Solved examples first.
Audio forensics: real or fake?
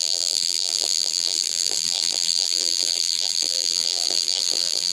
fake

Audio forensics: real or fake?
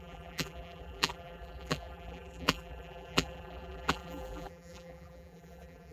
fake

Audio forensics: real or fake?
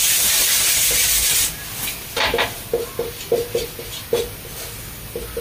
real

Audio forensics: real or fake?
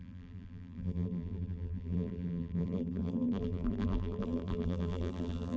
fake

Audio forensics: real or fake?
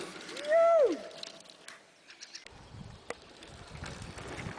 real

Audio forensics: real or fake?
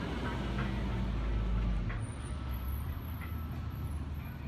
real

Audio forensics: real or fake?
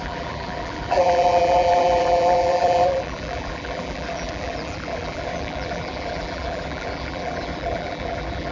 fake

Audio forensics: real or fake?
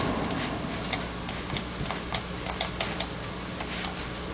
real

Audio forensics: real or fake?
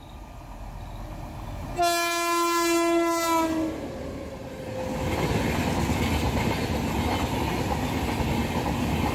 real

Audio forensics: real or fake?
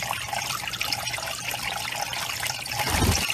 fake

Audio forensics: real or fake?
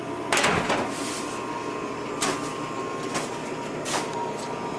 real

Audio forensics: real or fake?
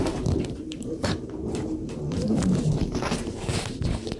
fake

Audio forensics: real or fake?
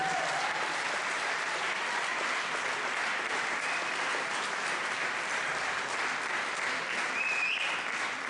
fake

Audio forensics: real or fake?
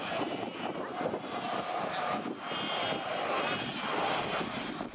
real